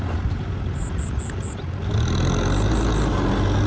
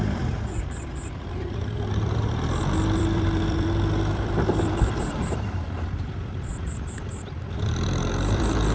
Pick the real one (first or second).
first